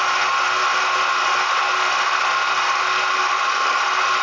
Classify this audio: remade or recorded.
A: recorded